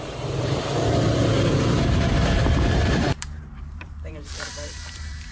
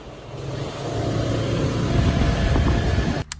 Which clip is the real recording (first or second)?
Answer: second